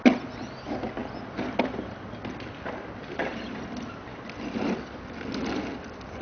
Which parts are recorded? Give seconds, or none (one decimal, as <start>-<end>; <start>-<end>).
0.0-6.2